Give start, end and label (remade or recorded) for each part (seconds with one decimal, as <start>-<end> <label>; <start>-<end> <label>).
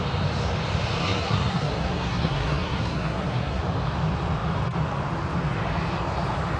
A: 0.0-1.0 recorded; 1.0-3.6 remade; 3.6-6.6 recorded